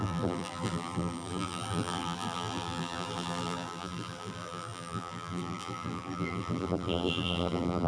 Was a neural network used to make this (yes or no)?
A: yes